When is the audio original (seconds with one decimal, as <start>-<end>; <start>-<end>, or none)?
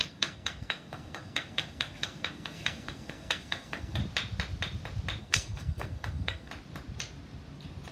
4.0-5.2; 6.5-7.9